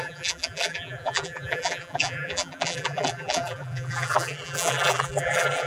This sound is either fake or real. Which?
fake